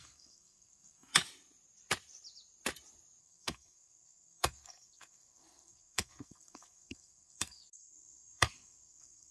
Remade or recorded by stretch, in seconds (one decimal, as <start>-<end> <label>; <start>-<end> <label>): 0.0-1.1 remade; 1.1-3.2 recorded; 3.2-9.3 remade